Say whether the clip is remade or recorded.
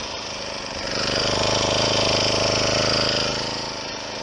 remade